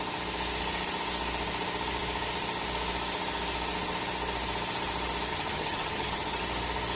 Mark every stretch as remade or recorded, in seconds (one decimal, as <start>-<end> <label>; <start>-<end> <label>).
0.0-5.3 recorded; 5.3-6.4 remade; 6.4-7.0 recorded